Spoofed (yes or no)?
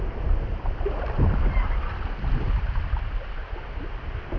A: no